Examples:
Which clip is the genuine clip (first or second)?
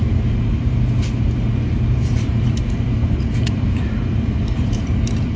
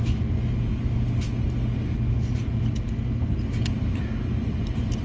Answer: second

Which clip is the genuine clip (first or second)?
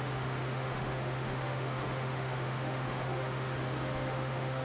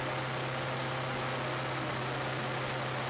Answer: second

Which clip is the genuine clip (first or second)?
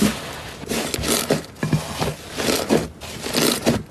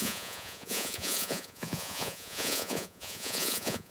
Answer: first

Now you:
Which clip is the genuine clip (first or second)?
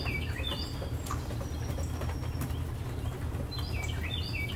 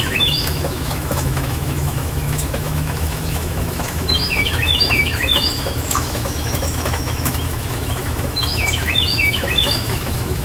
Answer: first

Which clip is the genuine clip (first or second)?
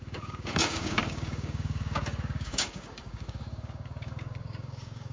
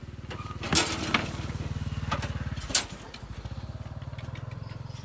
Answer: second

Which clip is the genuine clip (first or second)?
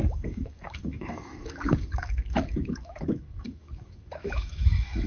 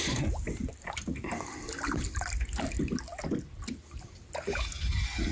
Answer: second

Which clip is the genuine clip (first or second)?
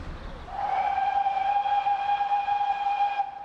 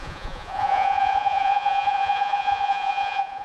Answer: first